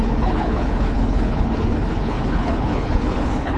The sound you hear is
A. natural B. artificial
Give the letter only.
B